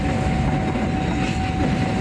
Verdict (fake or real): real